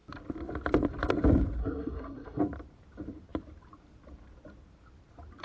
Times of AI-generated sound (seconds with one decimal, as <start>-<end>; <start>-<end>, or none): 1.6-2.4